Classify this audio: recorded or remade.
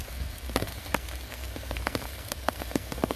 remade